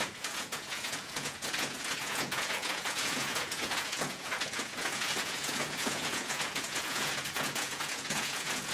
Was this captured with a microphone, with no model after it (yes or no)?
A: no